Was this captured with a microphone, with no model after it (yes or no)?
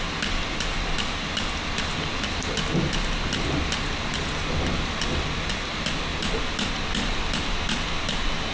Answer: yes